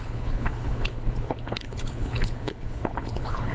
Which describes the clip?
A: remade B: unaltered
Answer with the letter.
A